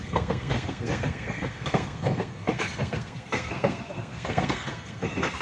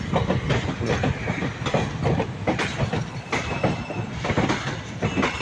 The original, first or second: second